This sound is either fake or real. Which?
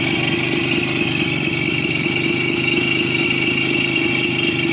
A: real